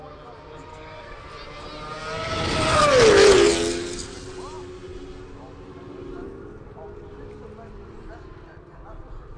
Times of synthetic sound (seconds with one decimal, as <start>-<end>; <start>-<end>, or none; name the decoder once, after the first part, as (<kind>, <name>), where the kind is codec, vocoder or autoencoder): 0.7-1.2 (codec, SNAC)